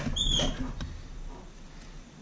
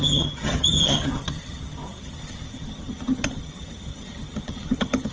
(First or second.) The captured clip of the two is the first